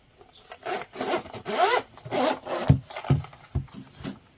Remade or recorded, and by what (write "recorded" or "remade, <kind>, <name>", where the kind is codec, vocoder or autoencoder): recorded